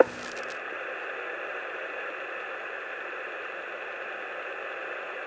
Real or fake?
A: real